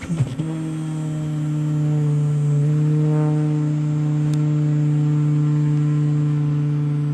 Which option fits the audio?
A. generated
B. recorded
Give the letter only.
B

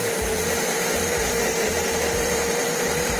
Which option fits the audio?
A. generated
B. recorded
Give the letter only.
A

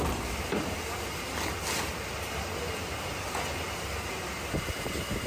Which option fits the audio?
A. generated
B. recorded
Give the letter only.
B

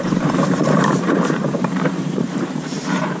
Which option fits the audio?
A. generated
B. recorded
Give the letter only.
A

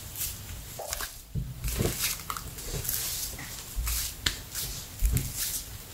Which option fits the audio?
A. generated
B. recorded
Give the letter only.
B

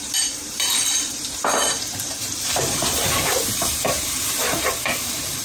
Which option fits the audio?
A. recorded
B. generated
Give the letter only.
B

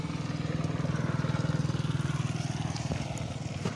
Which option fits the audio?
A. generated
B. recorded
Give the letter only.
B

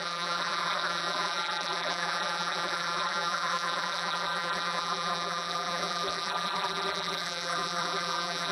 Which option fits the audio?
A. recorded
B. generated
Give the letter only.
B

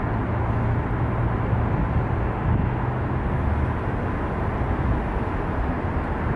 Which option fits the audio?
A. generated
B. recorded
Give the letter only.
B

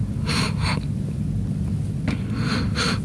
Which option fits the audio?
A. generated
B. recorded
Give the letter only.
B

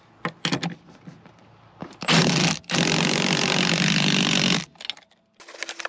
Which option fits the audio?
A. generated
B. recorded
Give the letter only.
B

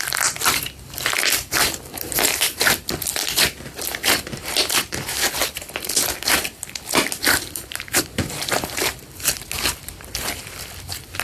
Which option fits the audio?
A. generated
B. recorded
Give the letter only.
A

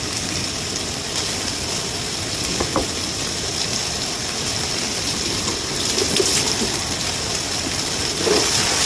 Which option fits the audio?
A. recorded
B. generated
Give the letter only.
A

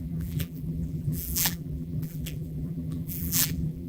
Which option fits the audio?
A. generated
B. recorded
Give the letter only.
A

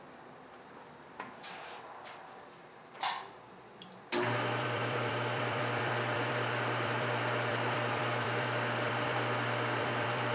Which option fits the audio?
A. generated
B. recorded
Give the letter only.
A